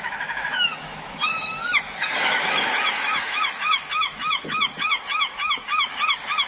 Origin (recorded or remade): remade